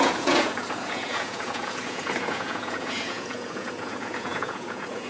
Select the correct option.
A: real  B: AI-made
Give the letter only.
B